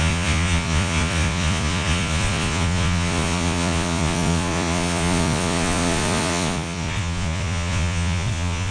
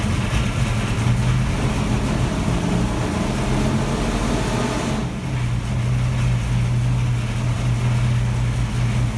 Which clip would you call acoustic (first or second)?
second